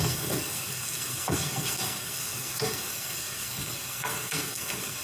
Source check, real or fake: fake